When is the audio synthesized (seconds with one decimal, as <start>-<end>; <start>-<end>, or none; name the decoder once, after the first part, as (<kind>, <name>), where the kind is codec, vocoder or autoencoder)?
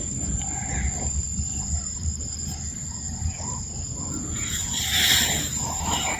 0.0-6.2 (vocoder, BigVGAN v2)